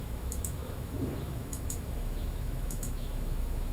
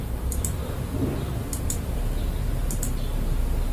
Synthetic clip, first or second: first